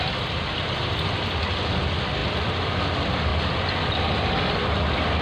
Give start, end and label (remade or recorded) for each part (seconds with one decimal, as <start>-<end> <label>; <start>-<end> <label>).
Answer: 0.0-2.2 recorded; 2.2-2.8 remade; 2.8-5.2 recorded